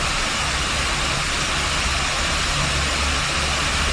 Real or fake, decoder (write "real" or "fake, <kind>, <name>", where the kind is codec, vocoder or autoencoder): real